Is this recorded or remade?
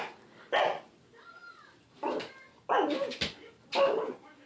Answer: recorded